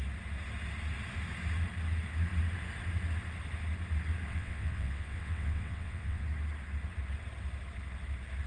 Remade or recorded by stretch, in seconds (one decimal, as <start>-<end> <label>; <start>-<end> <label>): 0.0-4.3 recorded; 4.3-6.2 remade; 6.2-8.5 recorded